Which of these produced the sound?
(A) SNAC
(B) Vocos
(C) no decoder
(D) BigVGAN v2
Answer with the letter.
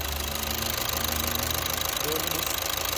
C